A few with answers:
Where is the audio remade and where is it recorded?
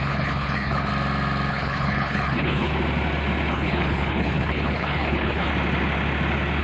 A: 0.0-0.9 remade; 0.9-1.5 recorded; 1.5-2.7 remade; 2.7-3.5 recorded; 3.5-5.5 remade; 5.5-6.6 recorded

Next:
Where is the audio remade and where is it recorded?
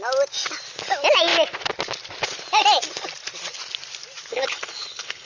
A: 0.0-4.3 recorded; 4.3-5.3 remade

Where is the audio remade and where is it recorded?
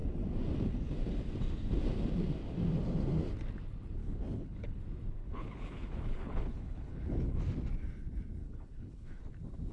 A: 0.0-4.0 recorded; 4.0-4.8 remade; 4.8-5.2 recorded; 5.2-7.3 remade; 7.3-8.4 recorded; 8.4-9.2 remade; 9.2-9.7 recorded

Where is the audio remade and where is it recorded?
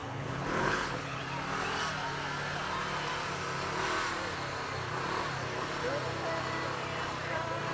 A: 0.0-1.2 remade; 1.2-7.7 recorded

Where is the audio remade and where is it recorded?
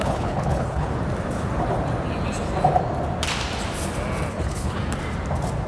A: 0.0-0.9 remade; 0.9-4.3 recorded; 4.3-4.8 remade; 4.8-5.7 recorded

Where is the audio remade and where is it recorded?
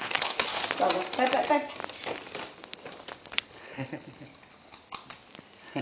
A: 0.0-0.5 remade; 0.5-3.5 recorded; 3.5-4.3 remade; 4.3-5.8 recorded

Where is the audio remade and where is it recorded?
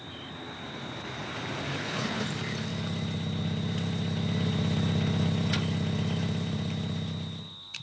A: 0.0-1.8 recorded; 1.8-2.3 remade; 2.3-7.8 recorded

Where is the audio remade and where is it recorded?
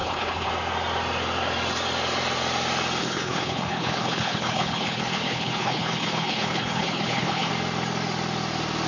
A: 0.0-0.5 remade; 0.5-3.0 recorded; 3.0-7.5 remade; 7.5-8.9 recorded